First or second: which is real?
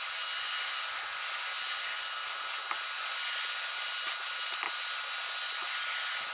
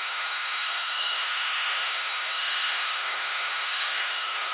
first